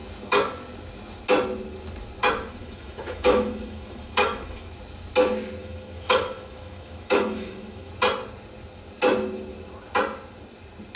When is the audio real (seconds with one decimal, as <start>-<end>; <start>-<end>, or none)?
0.0-2.6; 4.6-5.6; 7.9-11.0